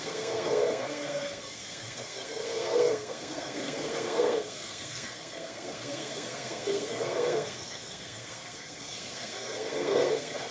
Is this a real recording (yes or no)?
no